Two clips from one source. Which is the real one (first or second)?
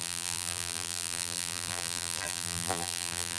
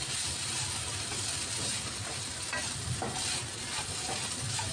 second